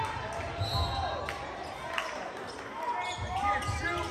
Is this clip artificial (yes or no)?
no